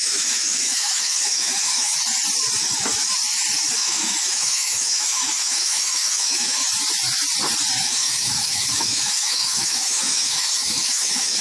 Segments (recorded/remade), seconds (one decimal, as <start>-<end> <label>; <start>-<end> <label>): 0.0-1.9 remade; 1.9-3.8 recorded; 3.8-6.6 remade; 6.6-7.8 recorded; 7.8-11.4 remade